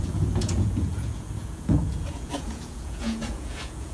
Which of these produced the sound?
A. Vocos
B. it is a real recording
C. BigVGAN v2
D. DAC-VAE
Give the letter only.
A